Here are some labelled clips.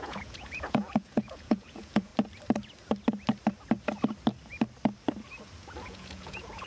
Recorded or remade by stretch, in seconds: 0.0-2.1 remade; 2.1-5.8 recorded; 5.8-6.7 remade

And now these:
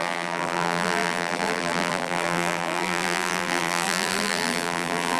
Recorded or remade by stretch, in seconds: 0.0-5.2 remade

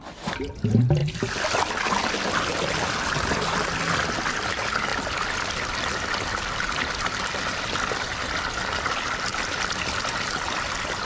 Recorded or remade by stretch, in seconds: 0.0-11.1 recorded

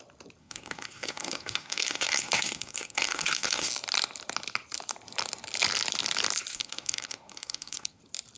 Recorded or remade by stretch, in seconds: 0.0-0.4 recorded; 0.4-3.7 remade; 3.7-6.5 recorded; 6.5-8.0 remade; 8.0-8.4 recorded